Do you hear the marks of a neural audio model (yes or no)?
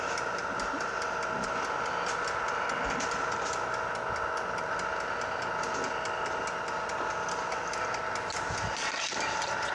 no